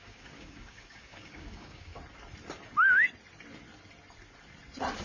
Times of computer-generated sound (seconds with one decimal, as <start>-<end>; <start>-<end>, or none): 0.0-1.9